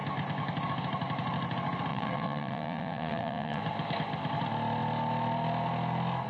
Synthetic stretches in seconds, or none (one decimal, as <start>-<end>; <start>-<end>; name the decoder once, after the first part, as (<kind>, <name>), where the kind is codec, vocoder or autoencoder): 1.9-3.6 (vocoder, WaveNeXt)